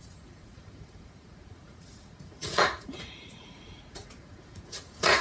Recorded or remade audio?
remade